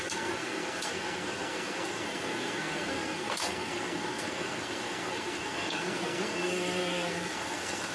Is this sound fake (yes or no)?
yes